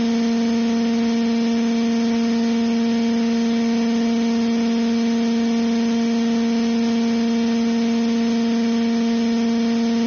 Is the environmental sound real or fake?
real